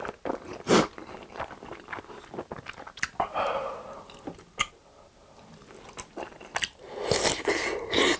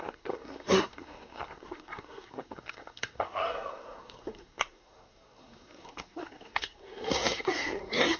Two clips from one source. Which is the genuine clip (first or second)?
first